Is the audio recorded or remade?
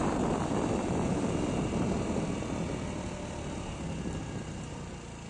recorded